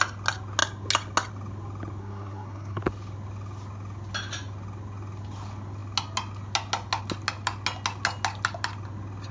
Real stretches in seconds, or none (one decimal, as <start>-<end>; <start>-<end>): 0.0-2.0; 2.8-9.3